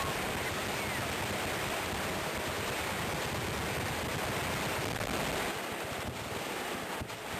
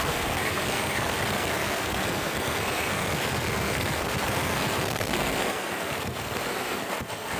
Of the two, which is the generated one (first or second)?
second